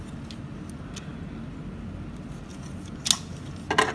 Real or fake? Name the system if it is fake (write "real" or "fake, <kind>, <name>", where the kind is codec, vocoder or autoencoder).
real